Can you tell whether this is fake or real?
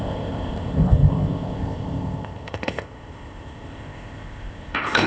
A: fake